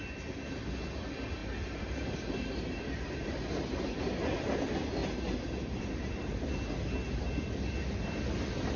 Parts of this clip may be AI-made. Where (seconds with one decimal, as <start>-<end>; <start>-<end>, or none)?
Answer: 1.4-4.0; 5.0-5.9